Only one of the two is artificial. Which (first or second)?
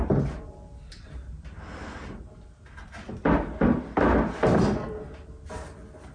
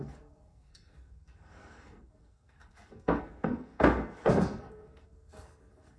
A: second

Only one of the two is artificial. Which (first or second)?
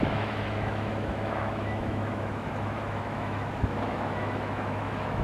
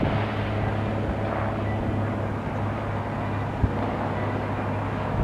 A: first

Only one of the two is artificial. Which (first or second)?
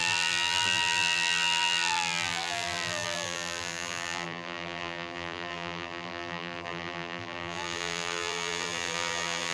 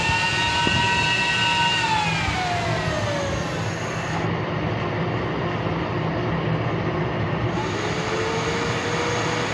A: first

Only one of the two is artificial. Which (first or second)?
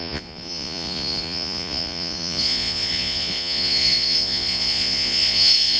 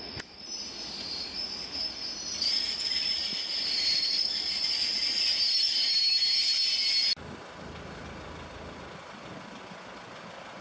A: first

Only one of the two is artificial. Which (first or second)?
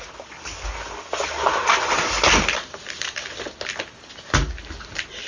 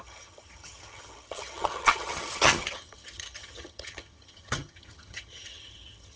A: second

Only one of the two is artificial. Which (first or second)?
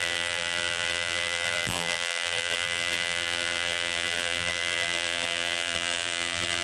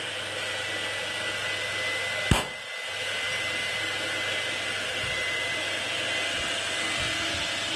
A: first